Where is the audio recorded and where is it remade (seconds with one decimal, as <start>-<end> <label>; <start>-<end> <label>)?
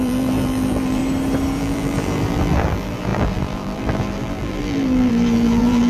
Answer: 0.0-1.0 remade; 1.0-1.6 recorded; 1.6-5.9 remade